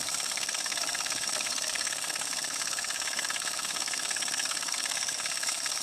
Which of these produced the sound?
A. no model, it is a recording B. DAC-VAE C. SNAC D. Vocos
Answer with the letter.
C